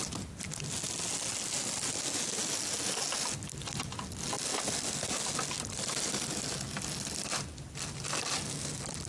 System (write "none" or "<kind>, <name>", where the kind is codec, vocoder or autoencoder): none